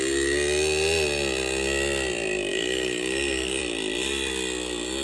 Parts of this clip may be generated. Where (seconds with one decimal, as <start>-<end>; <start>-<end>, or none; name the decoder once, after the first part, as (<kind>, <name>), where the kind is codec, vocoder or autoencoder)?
2.5-3.6 (codec, DAC)